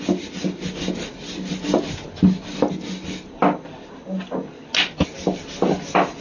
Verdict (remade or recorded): recorded